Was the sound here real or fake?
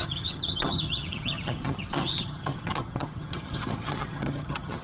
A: fake